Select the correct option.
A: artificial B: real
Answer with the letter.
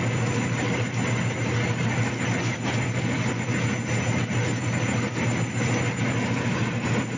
B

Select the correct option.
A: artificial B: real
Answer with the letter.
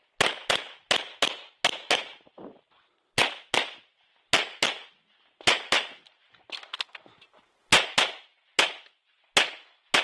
B